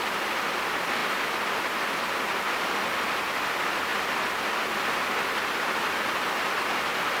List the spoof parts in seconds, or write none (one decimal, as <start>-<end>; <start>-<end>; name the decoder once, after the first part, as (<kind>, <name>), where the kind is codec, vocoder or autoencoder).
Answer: none